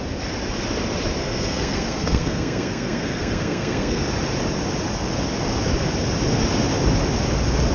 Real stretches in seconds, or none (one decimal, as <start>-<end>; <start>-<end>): 0.0-1.2; 4.0-7.7